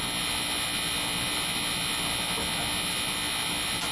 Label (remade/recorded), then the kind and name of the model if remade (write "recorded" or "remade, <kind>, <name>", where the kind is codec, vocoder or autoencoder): recorded